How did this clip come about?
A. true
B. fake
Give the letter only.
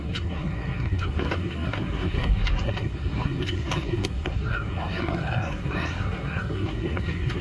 B